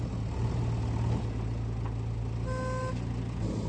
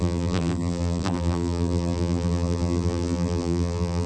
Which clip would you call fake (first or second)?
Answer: second